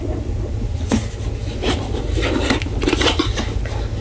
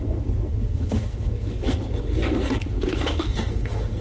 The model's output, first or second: second